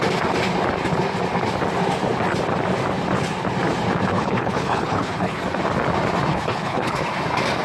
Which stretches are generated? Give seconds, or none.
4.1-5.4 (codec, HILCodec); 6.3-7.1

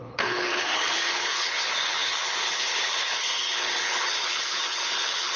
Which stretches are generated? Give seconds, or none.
0.0-5.4 (codec, HILCodec)

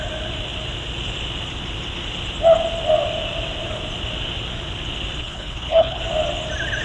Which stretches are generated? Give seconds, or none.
5.2-6.0 (codec, HILCodec)

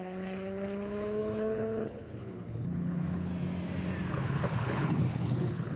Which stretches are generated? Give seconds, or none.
0.0-3.3 (codec, HILCodec); 4.1-5.8

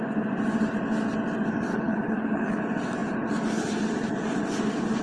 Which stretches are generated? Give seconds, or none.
1.7-2.6 (codec, HILCodec)

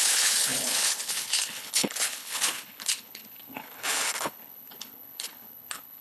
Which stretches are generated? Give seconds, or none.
0.0-6.0 (codec, HILCodec)